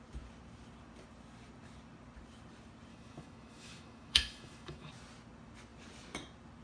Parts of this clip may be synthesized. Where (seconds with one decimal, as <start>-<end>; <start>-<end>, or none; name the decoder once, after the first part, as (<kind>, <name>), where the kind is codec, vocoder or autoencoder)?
2.9-4.9 (autoencoder, DAC-VAE)